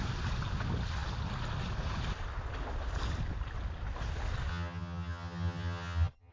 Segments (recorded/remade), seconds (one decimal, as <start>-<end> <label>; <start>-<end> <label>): 0.0-4.5 recorded; 4.5-6.3 remade

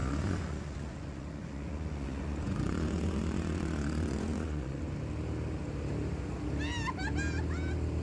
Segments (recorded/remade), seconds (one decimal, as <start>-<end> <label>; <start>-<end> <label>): 0.0-4.8 remade; 4.8-8.0 recorded